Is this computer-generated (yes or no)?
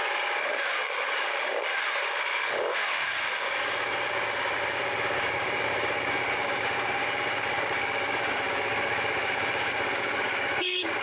yes